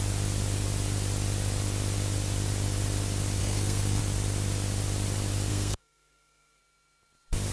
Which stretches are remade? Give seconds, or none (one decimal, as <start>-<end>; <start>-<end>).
3.4-4.0; 5.5-6.6